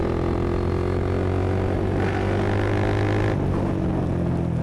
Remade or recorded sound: recorded